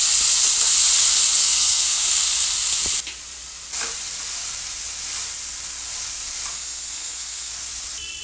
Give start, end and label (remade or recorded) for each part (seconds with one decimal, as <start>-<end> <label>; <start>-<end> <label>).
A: 0.0-1.4 recorded; 1.4-2.1 remade; 2.1-6.5 recorded; 6.5-7.5 remade; 7.5-8.2 recorded